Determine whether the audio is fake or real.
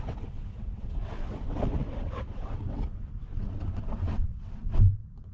fake